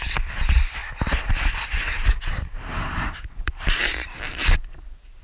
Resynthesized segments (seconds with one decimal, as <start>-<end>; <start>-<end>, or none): 2.7-4.7